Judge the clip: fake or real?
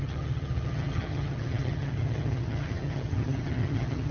fake